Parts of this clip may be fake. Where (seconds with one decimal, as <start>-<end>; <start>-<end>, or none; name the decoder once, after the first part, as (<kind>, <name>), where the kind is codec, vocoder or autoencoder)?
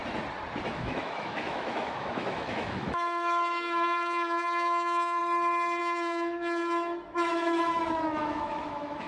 0.7-5.2 (autoencoder, DAC-VAE); 5.8-9.1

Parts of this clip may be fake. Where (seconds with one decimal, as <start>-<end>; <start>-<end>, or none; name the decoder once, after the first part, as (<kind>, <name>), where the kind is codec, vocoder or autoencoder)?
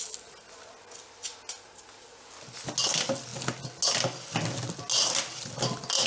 none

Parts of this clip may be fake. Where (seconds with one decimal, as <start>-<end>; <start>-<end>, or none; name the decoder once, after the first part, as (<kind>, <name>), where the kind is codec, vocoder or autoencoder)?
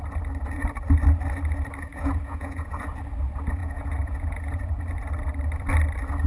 1.9-2.7 (vocoder, Vocos); 3.6-4.8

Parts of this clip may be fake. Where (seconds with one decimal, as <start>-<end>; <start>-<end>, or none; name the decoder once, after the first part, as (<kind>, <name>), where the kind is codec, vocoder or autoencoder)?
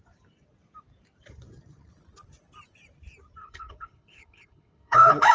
3.4-5.3 (codec, HILCodec)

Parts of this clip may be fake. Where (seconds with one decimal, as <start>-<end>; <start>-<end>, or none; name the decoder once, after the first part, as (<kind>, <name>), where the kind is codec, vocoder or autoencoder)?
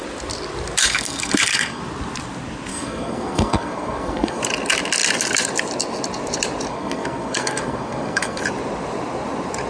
0.8-1.8 (codec, SNAC); 2.7-4.4; 6.7-8.4